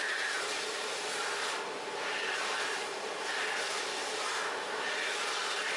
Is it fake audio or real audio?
real